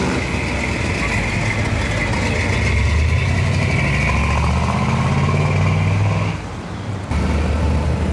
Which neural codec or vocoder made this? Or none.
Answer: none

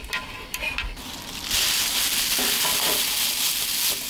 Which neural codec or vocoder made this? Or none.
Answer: vocoder, BigVGAN v2